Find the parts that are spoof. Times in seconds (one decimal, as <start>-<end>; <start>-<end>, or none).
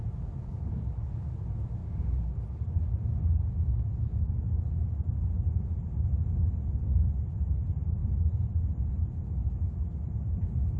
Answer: 0.5-1.2; 1.8-2.8